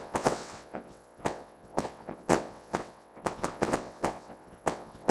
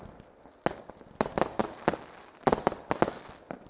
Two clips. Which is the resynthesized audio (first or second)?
first